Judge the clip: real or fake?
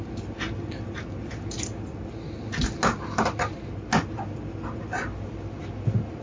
real